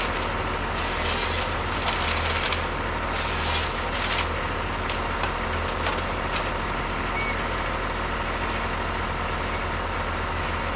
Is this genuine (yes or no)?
yes